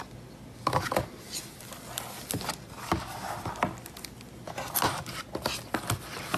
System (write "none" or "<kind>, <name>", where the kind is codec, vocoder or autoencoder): none